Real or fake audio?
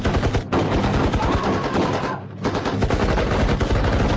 real